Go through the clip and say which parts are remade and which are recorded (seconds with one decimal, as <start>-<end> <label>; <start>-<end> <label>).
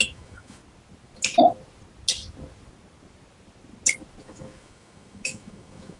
0.0-0.6 remade; 0.6-4.2 recorded; 4.2-6.0 remade